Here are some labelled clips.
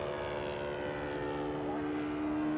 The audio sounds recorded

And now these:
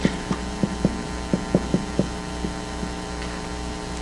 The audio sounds recorded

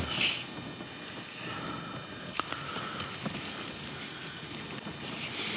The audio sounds recorded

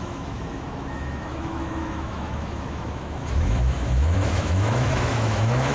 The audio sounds remade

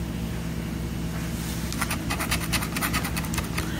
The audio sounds recorded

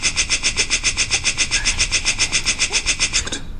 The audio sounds remade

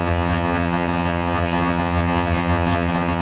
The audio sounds remade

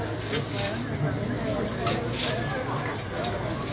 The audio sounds recorded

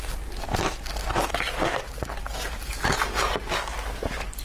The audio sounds recorded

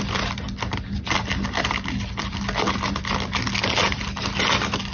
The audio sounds recorded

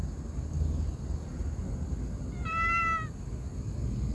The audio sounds recorded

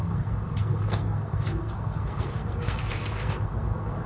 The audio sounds remade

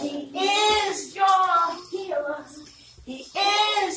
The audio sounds recorded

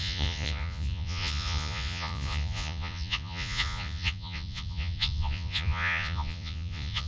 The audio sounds remade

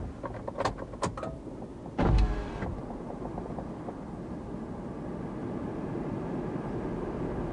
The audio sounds recorded